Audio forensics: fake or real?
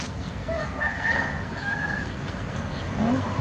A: fake